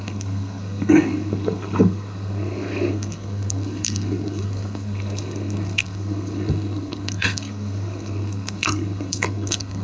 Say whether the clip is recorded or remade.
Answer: remade